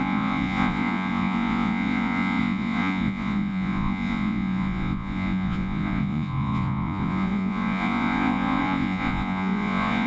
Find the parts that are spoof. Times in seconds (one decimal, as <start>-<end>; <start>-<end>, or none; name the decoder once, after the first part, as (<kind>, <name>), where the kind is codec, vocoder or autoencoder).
0.0-10.1 (vocoder, Vocos)